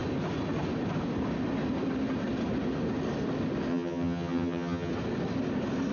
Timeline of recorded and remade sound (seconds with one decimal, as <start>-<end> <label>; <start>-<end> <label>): 0.0-3.7 recorded; 3.7-4.9 remade; 4.9-5.9 recorded